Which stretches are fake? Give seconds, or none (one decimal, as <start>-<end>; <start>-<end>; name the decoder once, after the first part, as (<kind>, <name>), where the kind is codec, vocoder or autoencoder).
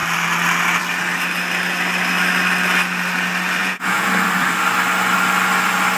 3.6-4.1 (vocoder, Vocos)